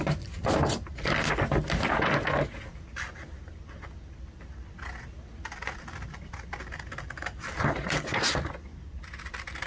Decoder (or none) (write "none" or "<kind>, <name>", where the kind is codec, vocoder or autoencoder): none